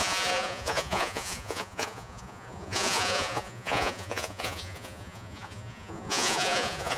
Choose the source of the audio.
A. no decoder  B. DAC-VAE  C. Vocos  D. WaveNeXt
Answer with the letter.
C